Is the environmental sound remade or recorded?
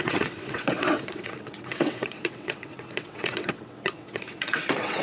remade